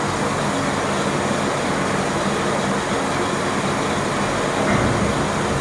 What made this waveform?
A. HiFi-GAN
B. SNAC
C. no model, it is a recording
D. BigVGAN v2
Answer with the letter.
C